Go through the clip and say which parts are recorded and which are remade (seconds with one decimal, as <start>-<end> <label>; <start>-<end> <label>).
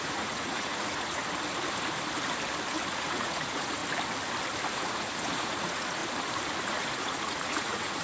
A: 0.0-1.2 remade; 1.2-2.9 recorded; 2.9-3.8 remade; 3.8-4.7 recorded; 4.7-6.0 remade; 6.0-6.7 recorded; 6.7-8.0 remade